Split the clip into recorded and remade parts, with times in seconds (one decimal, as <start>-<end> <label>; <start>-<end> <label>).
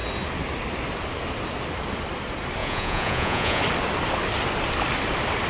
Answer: 0.0-2.6 recorded; 2.6-3.6 remade; 3.6-5.5 recorded